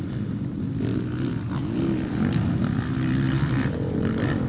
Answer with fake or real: real